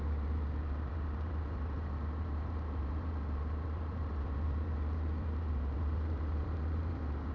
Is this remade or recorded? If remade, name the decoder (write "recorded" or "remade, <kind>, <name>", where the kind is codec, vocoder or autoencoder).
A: remade, vocoder, BigVGAN v2